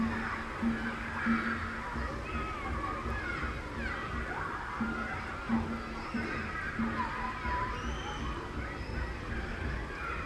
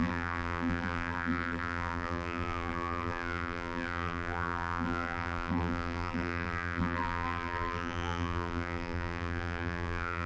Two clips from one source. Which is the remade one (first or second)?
second